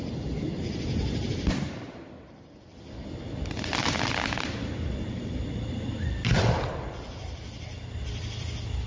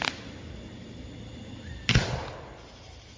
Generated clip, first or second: first